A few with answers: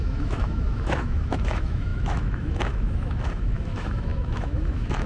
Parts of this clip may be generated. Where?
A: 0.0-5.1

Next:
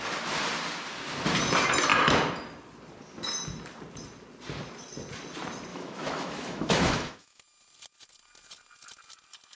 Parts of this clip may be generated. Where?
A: 5.7-7.4